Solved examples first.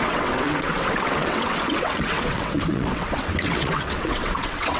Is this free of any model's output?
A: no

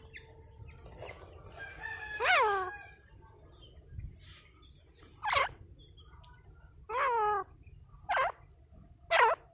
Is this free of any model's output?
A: yes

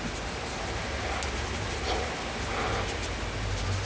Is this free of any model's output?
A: yes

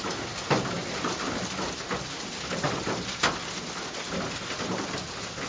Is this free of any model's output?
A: yes